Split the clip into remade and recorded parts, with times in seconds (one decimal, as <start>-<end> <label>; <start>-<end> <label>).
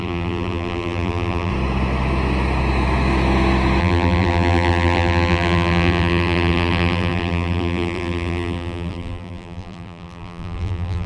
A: 0.0-1.5 remade; 1.5-3.8 recorded; 3.8-11.1 remade